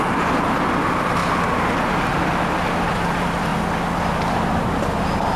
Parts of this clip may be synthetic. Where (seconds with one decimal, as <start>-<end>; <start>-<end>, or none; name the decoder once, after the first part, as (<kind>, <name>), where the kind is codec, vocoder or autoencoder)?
none